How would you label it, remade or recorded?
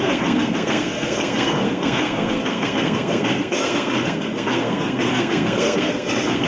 remade